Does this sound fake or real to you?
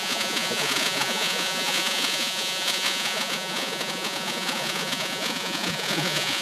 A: fake